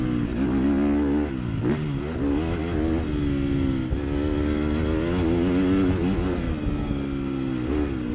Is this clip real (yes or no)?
yes